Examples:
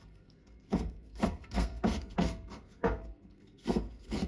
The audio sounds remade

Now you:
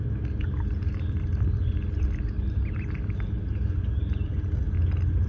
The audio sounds recorded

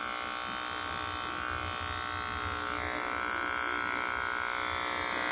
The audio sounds recorded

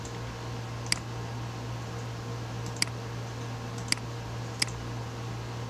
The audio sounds recorded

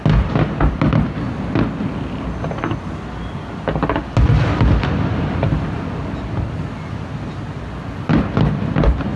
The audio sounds recorded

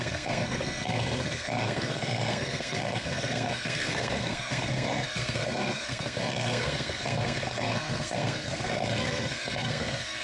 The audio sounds remade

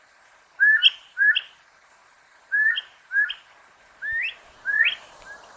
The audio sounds recorded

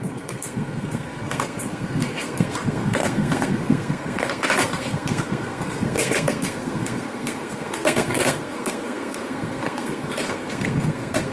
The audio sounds remade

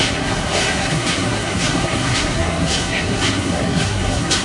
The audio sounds remade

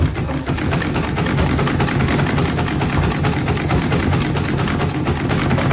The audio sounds recorded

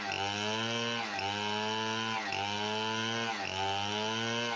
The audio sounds recorded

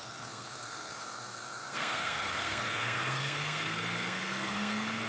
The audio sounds remade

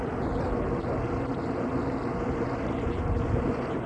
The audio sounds recorded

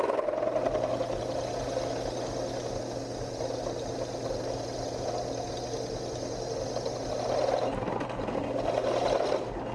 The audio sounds recorded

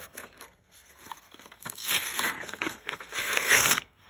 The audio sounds remade